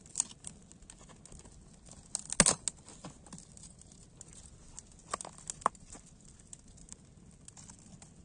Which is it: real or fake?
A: real